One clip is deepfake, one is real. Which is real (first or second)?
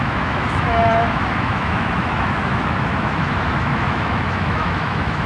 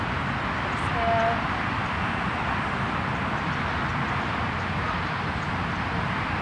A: second